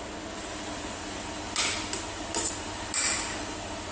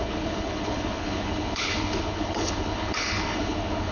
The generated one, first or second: second